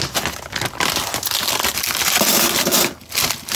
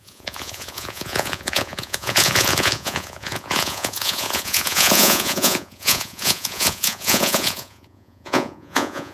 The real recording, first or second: first